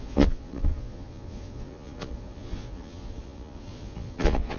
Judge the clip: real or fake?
fake